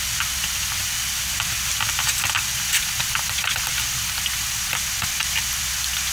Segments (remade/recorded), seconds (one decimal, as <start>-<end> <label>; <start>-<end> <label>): 0.0-6.1 recorded